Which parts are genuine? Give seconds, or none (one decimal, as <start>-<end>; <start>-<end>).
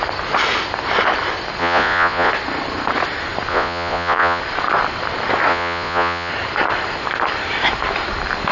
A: 0.0-1.6; 2.3-3.5; 4.4-5.5; 6.3-8.5